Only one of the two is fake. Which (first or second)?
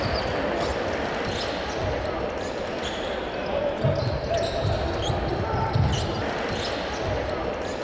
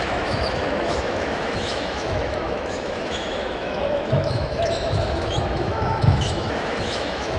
second